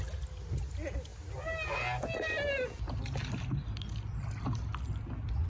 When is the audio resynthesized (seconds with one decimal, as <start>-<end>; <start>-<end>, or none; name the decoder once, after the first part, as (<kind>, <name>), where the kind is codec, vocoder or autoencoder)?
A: none